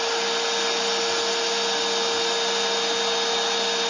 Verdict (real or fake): real